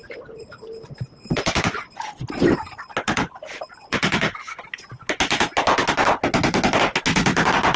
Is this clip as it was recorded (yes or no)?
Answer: yes